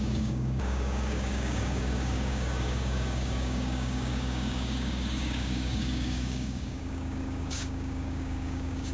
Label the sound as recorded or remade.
remade